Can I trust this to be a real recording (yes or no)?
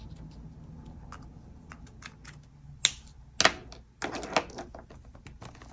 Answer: yes